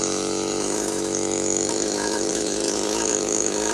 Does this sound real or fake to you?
fake